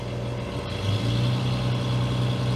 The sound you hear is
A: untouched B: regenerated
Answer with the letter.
A